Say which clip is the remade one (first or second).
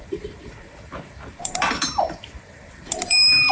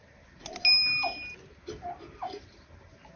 first